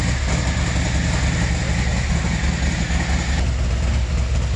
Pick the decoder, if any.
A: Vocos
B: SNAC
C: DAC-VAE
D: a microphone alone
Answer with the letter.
D